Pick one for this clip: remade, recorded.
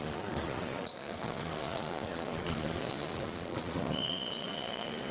remade